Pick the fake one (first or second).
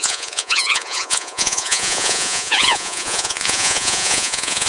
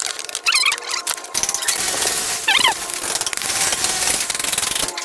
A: first